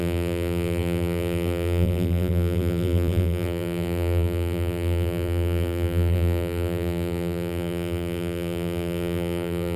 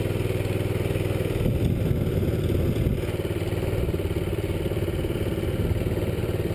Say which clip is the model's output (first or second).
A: first